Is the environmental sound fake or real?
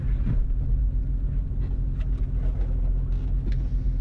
real